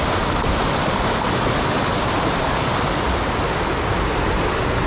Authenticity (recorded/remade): recorded